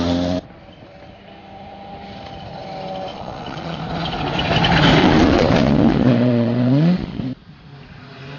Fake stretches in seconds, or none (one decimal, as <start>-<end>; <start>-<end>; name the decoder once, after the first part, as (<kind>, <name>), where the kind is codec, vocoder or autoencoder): 3.1-3.8 (vocoder, Vocos); 5.0-7.2